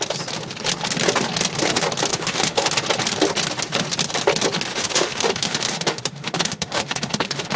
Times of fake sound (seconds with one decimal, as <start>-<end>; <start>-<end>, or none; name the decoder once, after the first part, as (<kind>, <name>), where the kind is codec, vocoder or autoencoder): 2.1-2.7 (autoencoder, DAC-VAE); 4.7-7.6